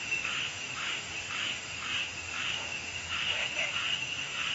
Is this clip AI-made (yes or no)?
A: yes